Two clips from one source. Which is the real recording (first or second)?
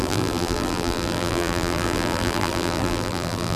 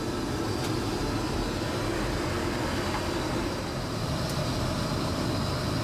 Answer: second